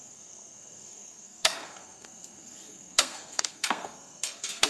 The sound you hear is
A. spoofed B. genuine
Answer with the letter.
A